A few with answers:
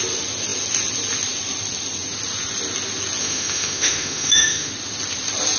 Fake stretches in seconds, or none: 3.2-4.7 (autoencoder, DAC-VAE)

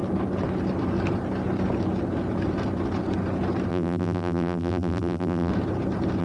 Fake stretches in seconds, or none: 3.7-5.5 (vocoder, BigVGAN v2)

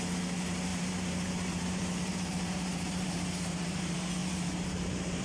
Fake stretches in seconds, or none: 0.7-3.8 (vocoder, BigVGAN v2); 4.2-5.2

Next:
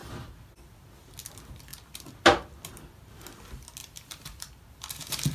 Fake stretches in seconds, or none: 0.0-0.5 (vocoder, BigVGAN v2); 3.8-4.7